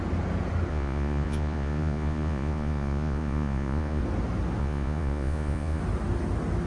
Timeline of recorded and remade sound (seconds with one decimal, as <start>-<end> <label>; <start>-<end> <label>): 0.0-0.7 recorded; 0.7-4.0 remade; 4.0-4.6 recorded; 4.6-5.8 remade; 5.8-6.7 recorded